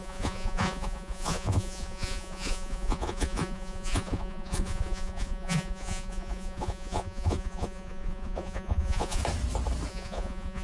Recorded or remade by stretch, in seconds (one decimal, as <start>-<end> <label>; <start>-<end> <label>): 0.0-9.2 remade; 9.2-9.9 recorded; 9.9-10.6 remade